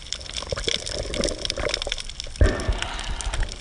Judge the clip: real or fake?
real